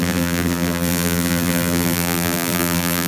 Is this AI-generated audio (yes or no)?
yes